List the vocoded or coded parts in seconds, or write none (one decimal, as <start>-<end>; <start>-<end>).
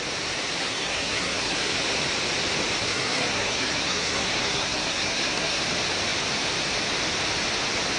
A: 0.6-1.7; 2.8-5.6